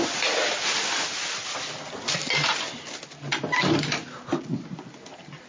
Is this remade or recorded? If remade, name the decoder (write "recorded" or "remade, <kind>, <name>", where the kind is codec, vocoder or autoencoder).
recorded